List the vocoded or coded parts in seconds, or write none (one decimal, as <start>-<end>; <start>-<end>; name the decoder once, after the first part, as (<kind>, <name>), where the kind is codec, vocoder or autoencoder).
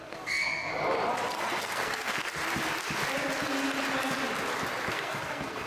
0.0-0.7 (codec, SNAC); 1.4-2.3; 4.9-5.7